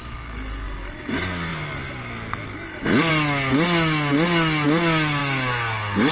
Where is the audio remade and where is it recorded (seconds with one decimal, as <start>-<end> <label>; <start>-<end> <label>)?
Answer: 0.0-5.2 recorded; 5.2-6.1 remade